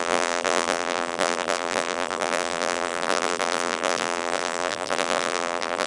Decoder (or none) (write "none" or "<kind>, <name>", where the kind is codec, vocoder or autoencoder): vocoder, BigVGAN v2